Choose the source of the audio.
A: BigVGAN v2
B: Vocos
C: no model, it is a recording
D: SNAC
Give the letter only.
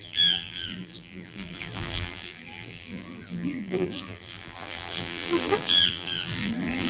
A